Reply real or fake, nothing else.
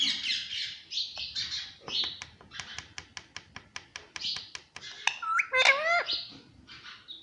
real